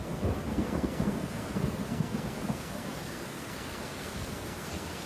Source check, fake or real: fake